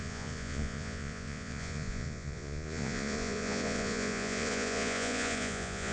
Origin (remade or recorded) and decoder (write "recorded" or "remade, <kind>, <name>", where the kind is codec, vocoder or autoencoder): remade, vocoder, Vocos